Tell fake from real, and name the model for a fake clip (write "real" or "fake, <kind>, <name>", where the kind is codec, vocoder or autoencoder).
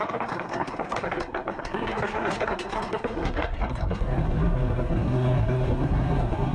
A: fake, codec, SNAC